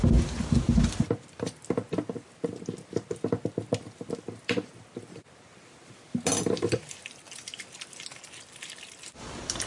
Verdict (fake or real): real